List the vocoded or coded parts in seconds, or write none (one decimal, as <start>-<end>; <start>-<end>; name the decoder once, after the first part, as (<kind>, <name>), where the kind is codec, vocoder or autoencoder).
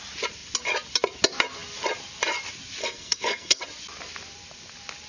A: 2.8-3.6 (codec, SNAC)